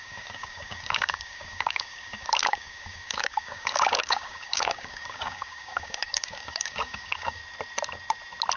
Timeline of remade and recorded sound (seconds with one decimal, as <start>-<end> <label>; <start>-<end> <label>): 0.0-7.4 remade; 7.4-8.6 recorded